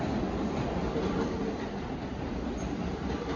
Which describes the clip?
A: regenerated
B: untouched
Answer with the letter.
B